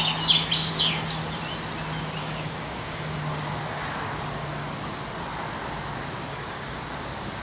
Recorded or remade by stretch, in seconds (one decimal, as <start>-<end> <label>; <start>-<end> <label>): 0.0-2.2 recorded; 2.2-3.1 remade; 3.1-6.3 recorded; 6.3-6.8 remade; 6.8-7.4 recorded